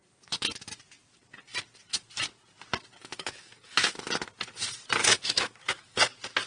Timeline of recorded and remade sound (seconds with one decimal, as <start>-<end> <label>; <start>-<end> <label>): 0.0-3.0 recorded; 3.0-4.1 remade; 4.1-5.0 recorded; 5.0-6.0 remade; 6.0-6.5 recorded